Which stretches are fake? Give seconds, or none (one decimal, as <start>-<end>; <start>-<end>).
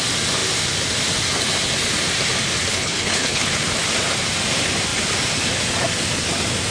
2.7-3.5